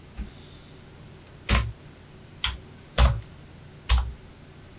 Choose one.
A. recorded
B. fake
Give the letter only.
A